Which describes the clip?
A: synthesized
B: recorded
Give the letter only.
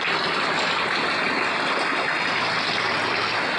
B